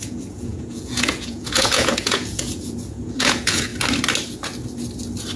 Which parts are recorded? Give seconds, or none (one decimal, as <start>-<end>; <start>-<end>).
3.7-5.4